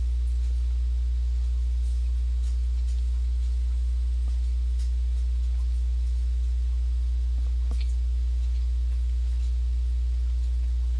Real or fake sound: real